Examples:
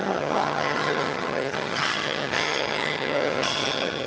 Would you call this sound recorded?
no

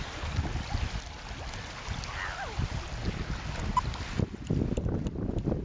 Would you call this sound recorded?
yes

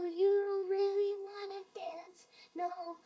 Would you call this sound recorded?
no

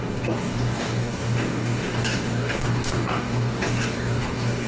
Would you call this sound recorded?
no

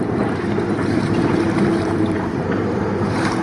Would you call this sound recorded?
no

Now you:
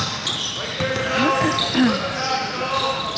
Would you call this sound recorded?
yes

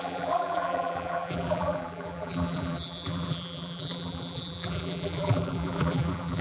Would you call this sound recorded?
no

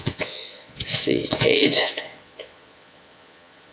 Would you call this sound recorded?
no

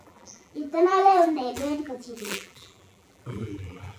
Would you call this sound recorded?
no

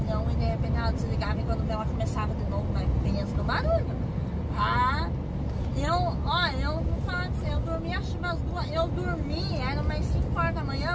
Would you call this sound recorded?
yes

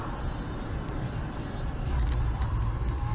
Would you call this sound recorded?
yes